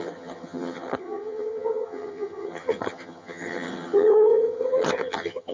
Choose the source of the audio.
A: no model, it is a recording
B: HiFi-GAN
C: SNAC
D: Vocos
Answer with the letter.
B